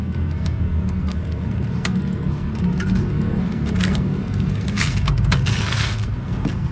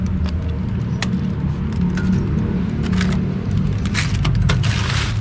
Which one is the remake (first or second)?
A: first